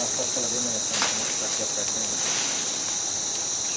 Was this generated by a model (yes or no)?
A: no